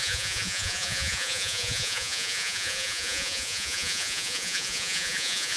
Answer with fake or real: fake